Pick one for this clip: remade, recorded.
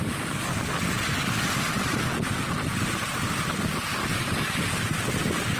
recorded